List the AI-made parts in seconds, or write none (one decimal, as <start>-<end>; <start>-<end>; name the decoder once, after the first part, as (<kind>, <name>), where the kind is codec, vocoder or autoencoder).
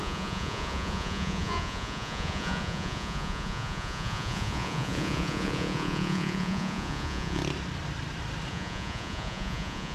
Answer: 0.0-7.4 (vocoder, Vocos); 8.5-9.9